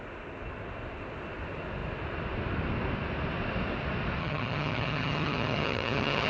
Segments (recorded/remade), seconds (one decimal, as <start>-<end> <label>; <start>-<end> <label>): 0.0-4.2 recorded; 4.2-6.3 remade